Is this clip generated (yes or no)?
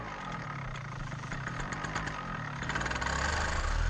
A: no